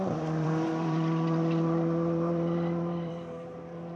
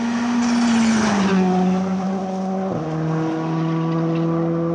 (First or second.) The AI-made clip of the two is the first